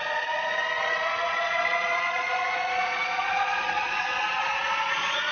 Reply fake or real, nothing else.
fake